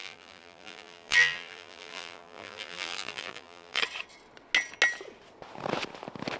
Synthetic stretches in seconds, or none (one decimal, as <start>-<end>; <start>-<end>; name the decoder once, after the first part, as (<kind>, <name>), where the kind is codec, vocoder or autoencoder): 0.0-3.8 (vocoder, BigVGAN v2)